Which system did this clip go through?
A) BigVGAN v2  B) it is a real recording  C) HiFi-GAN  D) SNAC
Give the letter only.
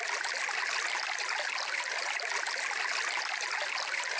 B